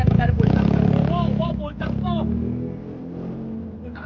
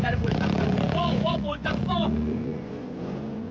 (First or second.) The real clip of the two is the first